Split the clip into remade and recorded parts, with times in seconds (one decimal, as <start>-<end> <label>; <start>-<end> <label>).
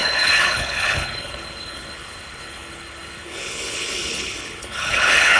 0.0-5.4 remade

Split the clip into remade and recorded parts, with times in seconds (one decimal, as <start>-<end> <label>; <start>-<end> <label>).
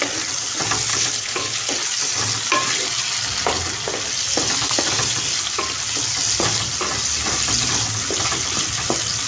0.0-0.9 recorded; 0.9-1.7 remade; 1.7-9.3 recorded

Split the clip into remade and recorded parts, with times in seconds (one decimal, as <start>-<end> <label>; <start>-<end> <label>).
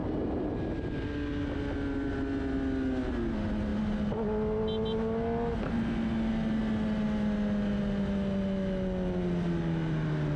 0.0-10.4 recorded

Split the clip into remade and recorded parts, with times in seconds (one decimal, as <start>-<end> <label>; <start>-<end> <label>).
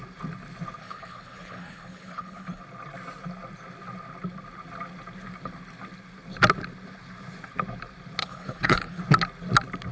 0.0-0.8 recorded; 0.8-2.6 remade; 2.6-8.2 recorded; 8.2-9.0 remade; 9.0-9.9 recorded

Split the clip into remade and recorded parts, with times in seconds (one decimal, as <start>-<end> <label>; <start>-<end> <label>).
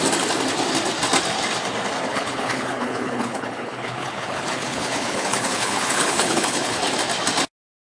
0.0-2.1 recorded; 2.1-6.8 remade; 6.8-7.9 recorded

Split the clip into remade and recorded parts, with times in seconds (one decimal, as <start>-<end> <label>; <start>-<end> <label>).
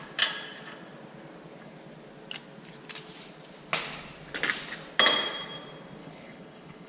0.0-6.0 recorded; 6.0-6.9 remade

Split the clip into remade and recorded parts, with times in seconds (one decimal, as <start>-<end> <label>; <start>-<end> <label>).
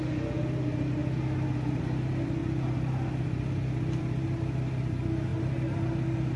0.0-6.4 recorded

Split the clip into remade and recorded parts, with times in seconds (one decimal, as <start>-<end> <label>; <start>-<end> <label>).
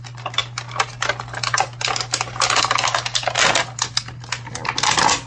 0.0-5.3 recorded